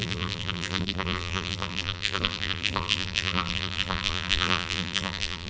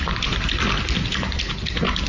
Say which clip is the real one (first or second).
second